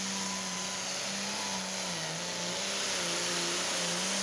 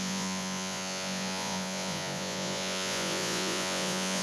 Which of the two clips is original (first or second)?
first